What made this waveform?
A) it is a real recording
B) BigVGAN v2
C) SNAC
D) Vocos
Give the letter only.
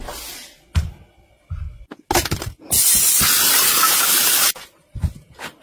A